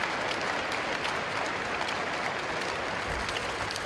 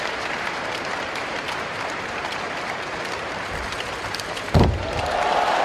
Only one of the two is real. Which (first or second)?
first